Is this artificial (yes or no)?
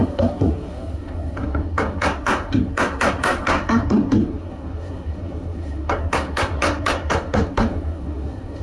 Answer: yes